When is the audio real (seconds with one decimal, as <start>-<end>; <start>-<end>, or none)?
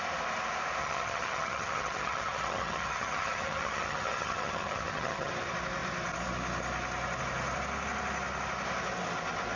0.0-0.8; 5.3-9.6